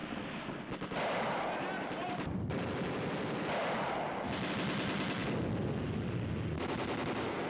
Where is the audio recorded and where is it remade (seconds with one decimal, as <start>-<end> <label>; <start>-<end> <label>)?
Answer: 0.0-7.5 recorded

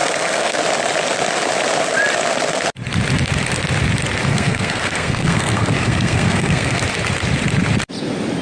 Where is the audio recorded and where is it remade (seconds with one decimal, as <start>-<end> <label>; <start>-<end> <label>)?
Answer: 0.0-0.6 remade; 0.6-4.3 recorded; 4.3-6.8 remade; 6.8-8.4 recorded

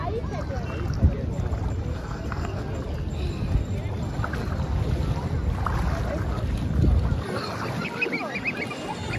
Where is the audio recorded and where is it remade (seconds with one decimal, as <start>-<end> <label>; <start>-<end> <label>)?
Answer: 0.0-1.9 recorded; 1.9-2.6 remade; 2.6-9.2 recorded